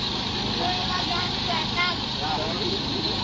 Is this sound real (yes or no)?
no